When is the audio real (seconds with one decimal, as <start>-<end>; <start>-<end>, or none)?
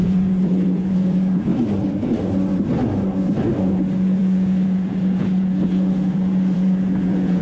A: 1.5-3.6